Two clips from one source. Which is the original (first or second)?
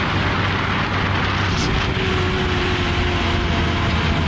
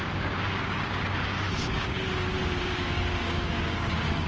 first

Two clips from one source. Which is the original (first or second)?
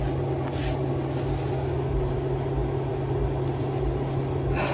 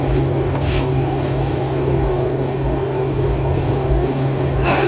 first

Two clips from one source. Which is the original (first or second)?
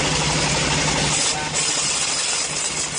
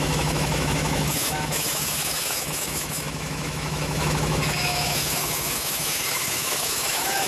first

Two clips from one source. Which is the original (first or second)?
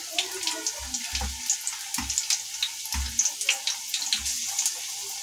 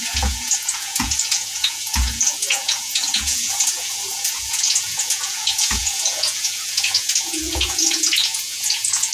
first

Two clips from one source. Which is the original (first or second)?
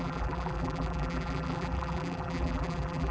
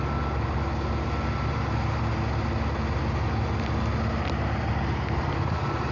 second